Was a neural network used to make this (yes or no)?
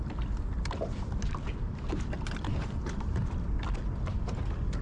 no